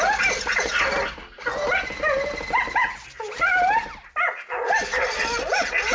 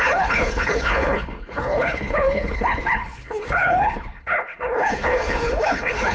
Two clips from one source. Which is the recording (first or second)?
first